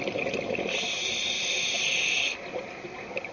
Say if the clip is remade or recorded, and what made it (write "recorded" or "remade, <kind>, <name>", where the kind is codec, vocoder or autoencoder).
recorded